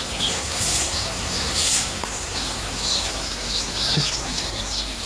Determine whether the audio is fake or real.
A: fake